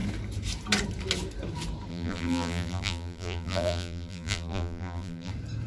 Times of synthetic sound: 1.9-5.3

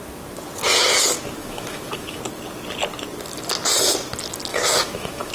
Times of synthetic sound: 1.4-2.2; 4.5-5.3

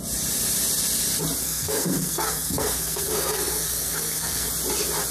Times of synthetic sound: 1.4-4.5